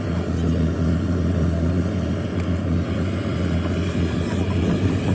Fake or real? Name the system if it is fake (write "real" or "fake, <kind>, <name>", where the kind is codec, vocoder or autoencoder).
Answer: real